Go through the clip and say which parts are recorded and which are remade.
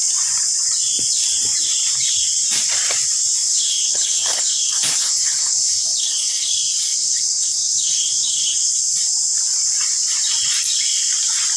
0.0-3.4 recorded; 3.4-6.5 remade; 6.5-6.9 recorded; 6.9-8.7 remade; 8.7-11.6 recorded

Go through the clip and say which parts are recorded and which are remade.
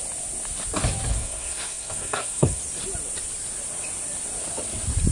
0.0-1.1 recorded; 1.1-2.6 remade; 2.6-5.1 recorded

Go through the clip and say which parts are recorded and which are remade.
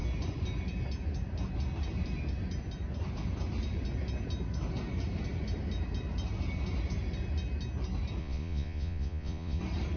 0.0-8.2 recorded; 8.2-9.6 remade; 9.6-10.0 recorded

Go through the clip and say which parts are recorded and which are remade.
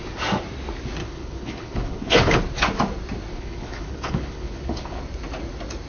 0.0-1.0 recorded; 1.0-2.4 remade; 2.4-3.3 recorded; 3.3-5.0 remade; 5.0-5.9 recorded